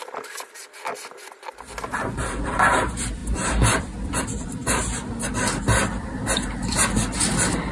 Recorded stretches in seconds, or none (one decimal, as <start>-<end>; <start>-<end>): 4.6-5.9